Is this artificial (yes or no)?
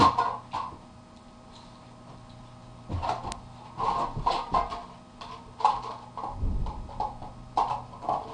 no